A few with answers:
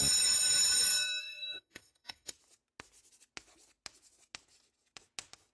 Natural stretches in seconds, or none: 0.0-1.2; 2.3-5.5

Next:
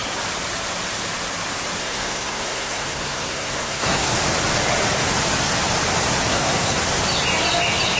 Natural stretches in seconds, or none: 0.0-1.8; 4.1-6.3; 6.8-8.0

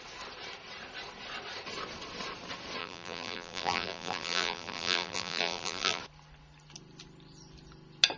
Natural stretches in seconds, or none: 0.0-2.8; 6.0-8.2

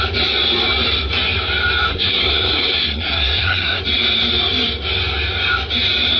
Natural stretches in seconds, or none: 0.0-1.9; 3.8-6.2

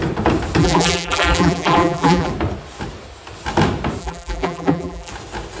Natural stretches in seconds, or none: 0.0-0.6; 2.3-4.0; 5.1-5.6

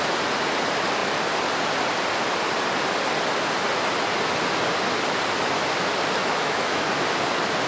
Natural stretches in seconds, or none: 0.0-6.2; 6.9-7.7

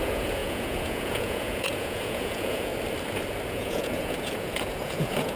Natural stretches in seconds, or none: 2.7-3.5